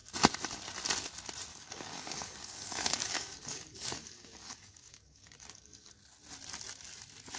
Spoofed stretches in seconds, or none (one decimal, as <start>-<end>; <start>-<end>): 1.5-5.9